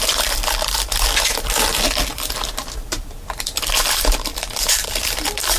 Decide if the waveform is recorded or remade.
remade